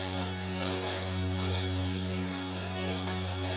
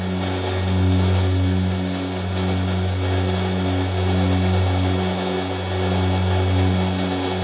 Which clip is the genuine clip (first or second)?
second